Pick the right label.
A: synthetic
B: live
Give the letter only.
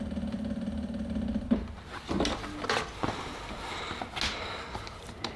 B